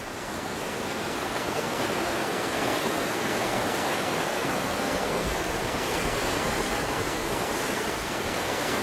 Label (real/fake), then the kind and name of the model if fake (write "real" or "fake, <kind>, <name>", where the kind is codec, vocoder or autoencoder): fake, codec, SNAC